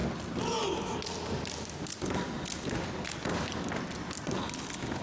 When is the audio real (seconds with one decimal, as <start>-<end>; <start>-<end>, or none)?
0.0-5.0